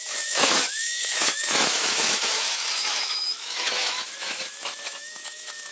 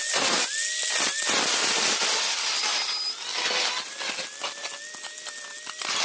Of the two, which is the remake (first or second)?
first